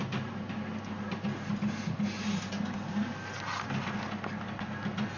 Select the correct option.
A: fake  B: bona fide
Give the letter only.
B